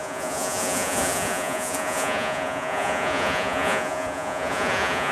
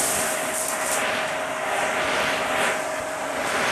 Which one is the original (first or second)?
second